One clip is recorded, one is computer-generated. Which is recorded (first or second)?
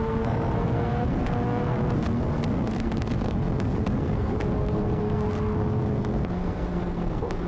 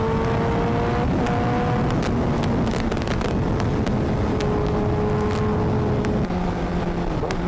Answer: second